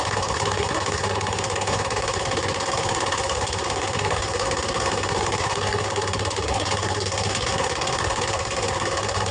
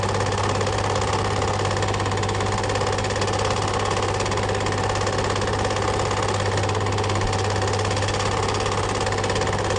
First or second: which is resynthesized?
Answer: first